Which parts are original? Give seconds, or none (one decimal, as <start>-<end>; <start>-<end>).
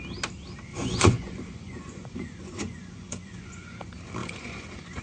0.0-0.7; 3.7-4.2